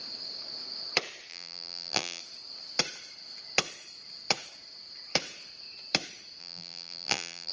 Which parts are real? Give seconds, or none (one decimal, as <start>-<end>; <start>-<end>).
0.0-1.3; 2.2-6.4